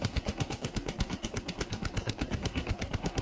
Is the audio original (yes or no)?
no